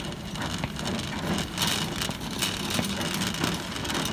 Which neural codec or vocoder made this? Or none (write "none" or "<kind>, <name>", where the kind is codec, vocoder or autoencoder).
none